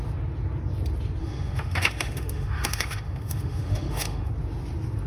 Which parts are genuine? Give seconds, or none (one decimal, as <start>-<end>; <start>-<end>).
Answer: 0.0-1.2; 4.3-5.1

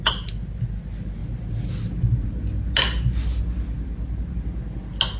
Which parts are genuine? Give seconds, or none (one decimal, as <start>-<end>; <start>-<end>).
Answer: 0.0-5.2

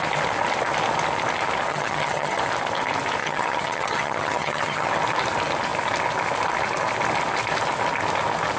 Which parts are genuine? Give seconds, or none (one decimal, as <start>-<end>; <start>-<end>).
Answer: 0.0-1.7; 2.4-3.2; 4.9-8.6

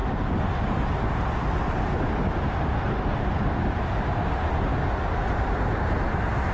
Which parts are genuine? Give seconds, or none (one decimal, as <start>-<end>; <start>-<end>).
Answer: 3.9-4.7; 6.0-6.5

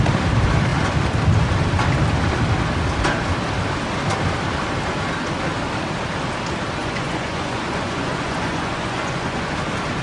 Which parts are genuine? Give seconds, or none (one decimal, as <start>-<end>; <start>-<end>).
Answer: 0.0-6.8; 9.5-10.0

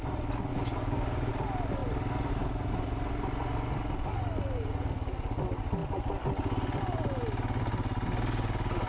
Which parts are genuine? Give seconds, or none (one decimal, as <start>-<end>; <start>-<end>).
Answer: 0.0-0.5; 1.3-8.9

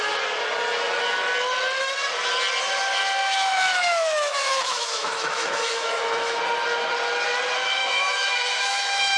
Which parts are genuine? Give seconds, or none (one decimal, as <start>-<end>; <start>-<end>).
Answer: 0.0-3.2; 6.4-7.8